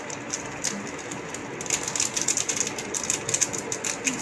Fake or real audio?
real